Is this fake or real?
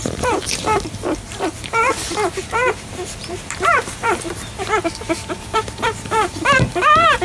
fake